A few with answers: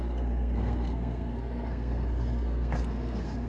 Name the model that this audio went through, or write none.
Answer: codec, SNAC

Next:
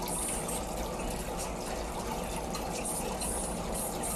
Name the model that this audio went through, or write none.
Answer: none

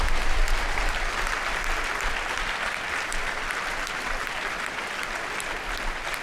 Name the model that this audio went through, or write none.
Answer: none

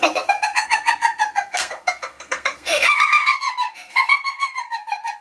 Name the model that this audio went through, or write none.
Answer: codec, SNAC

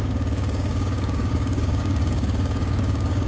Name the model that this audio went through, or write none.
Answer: codec, DAC